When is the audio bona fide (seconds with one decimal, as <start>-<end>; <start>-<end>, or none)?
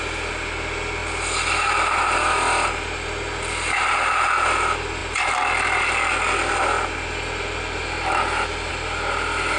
0.0-9.6